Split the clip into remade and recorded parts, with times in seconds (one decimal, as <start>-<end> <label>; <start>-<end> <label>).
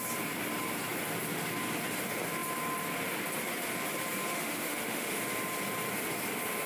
0.0-4.3 recorded; 4.3-5.2 remade; 5.2-6.7 recorded